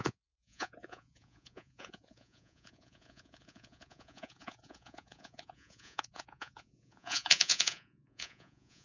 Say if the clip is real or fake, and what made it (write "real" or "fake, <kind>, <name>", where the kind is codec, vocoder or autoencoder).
fake, vocoder, Vocos